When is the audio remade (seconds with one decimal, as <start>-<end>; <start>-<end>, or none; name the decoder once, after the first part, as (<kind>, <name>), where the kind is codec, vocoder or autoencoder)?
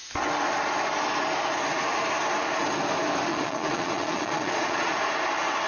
3.3-4.9 (vocoder, Vocos)